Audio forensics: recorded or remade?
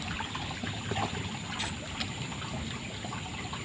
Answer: recorded